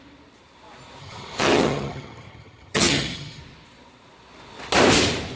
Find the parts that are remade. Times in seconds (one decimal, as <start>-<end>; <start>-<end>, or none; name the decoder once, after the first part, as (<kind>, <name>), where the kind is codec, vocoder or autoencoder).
1.0-3.4 (vocoder, HiFi-GAN)